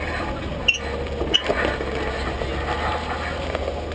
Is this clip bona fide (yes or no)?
yes